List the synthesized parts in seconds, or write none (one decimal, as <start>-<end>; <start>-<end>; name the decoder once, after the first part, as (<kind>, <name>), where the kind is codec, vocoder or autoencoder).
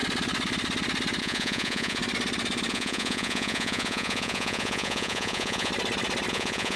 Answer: 1.2-2.0 (vocoder, Vocos); 2.7-5.7; 6.3-6.8